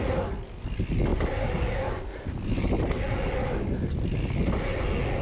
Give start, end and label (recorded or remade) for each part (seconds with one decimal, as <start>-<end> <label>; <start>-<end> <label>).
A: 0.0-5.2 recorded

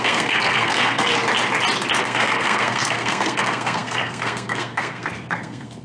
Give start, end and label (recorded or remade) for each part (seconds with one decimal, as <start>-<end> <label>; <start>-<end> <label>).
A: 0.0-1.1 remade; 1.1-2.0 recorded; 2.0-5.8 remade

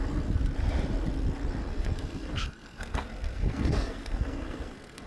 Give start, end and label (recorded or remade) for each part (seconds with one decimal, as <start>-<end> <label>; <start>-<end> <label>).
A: 0.0-1.6 recorded; 1.6-5.1 remade

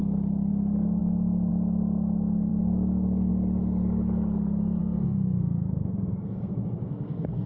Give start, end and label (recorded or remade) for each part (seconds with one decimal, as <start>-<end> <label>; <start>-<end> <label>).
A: 0.0-4.8 recorded; 4.8-7.5 remade

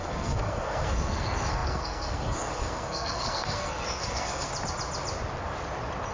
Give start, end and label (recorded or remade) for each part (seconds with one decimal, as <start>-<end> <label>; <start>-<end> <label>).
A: 0.0-4.5 remade; 4.5-6.1 recorded